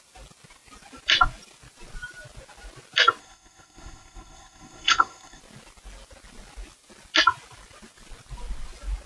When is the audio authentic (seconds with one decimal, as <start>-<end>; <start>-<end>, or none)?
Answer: 0.0-3.2; 5.4-9.1